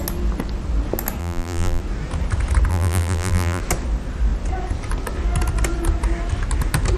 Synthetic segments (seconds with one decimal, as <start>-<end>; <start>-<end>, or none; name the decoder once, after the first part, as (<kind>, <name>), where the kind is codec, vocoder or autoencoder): 1.2-1.8 (vocoder, BigVGAN v2); 2.7-3.6